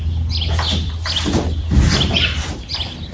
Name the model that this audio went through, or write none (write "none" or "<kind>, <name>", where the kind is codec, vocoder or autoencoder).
none